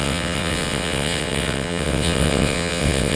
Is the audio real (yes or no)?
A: no